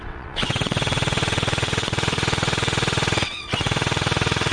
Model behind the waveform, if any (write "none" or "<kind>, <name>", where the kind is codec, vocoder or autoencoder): vocoder, WaveNeXt